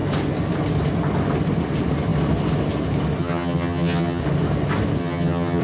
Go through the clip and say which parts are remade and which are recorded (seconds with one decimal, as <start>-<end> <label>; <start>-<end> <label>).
0.0-3.2 recorded; 3.2-4.2 remade; 4.2-5.0 recorded; 5.0-5.6 remade